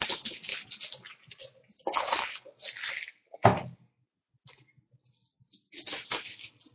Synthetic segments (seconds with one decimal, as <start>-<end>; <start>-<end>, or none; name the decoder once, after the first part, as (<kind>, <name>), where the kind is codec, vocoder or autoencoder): 0.5-2.9 (vocoder, BigVGAN v2)